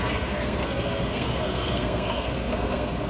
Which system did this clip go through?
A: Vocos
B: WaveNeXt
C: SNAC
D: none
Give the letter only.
C